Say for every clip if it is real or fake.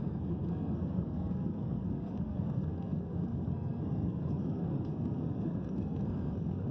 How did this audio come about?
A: fake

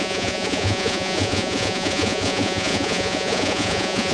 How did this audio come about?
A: fake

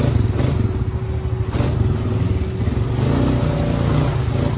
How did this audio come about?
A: real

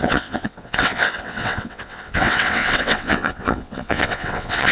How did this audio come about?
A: fake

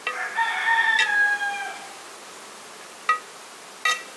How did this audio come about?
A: real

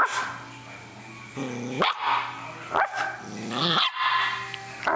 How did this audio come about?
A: real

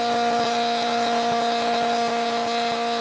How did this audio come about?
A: real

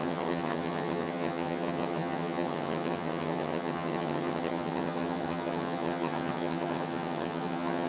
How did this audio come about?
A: fake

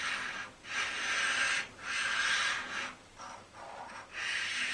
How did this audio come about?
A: real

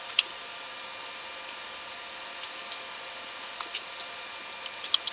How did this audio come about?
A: real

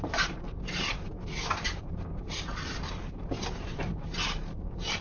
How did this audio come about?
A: fake